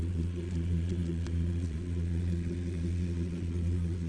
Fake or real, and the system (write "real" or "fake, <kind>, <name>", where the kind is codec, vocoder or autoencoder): fake, vocoder, Vocos